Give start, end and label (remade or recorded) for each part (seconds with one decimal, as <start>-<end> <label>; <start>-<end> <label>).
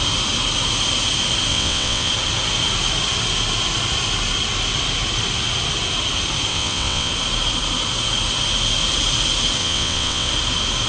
0.0-1.5 recorded; 1.5-2.1 remade; 2.1-6.5 recorded; 6.5-7.1 remade; 7.1-9.6 recorded; 9.6-10.3 remade; 10.3-10.9 recorded